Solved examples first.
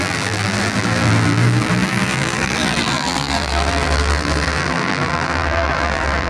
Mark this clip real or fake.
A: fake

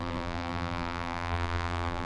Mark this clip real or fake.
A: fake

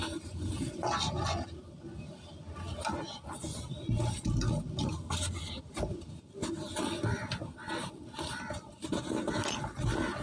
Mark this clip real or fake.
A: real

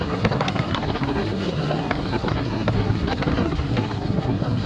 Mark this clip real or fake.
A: fake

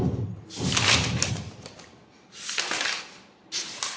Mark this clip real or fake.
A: real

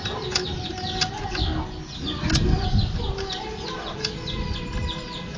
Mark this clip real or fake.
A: real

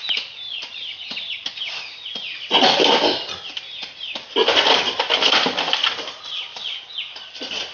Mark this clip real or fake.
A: fake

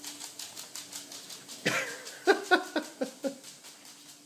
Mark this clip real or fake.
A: real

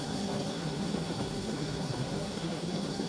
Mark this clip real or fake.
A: fake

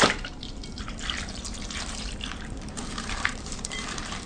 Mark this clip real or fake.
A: fake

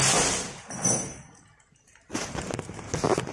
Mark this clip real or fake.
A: real